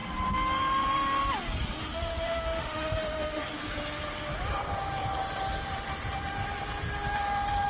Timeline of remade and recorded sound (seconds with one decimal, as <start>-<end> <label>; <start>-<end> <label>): 0.0-1.8 recorded; 1.8-3.4 remade; 3.4-7.7 recorded